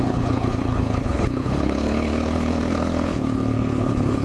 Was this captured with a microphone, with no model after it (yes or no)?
no